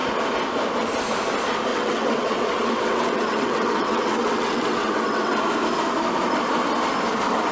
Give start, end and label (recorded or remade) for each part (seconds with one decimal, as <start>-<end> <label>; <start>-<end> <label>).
0.0-1.7 recorded; 1.7-5.4 remade; 5.4-7.5 recorded